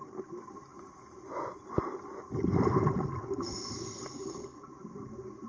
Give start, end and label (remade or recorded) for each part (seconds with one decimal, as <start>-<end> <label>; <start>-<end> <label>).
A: 0.0-5.5 recorded

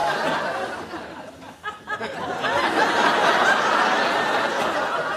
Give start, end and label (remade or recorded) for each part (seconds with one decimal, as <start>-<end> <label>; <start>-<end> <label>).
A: 0.0-5.2 recorded

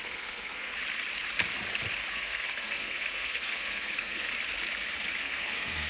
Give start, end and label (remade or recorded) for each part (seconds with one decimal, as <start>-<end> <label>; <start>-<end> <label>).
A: 0.0-0.7 remade; 0.7-2.1 recorded; 2.1-4.3 remade; 4.3-5.2 recorded; 5.2-5.9 remade

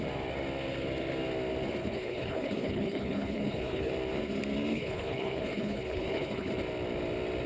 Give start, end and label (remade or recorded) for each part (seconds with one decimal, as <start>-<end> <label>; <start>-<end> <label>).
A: 0.0-1.8 recorded; 1.8-3.9 remade; 3.9-4.7 recorded; 4.7-6.5 remade; 6.5-7.5 recorded

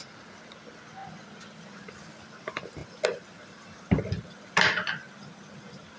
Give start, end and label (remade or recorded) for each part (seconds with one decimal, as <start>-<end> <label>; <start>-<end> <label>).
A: 0.0-6.0 recorded